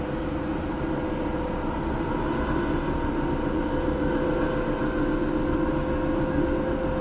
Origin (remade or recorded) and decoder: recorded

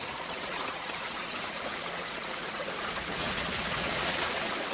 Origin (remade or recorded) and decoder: remade, vocoder, Vocos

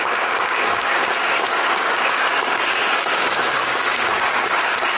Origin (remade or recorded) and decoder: remade, codec, DAC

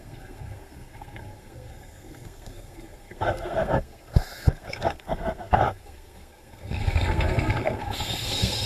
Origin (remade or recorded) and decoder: remade, codec, SNAC